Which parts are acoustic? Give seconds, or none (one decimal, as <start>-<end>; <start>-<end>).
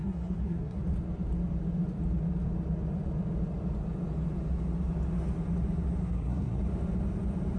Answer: 0.8-6.0; 6.6-7.6